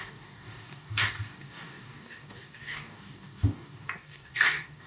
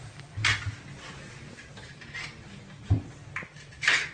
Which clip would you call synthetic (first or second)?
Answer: first